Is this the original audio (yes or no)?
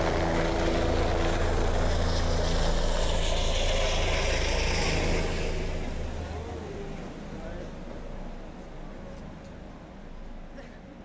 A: yes